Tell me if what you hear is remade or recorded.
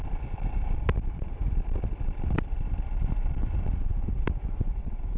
recorded